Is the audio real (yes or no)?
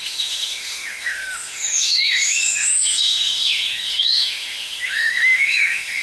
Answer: no